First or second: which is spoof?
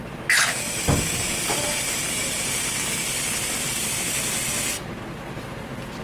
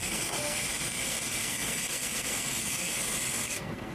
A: second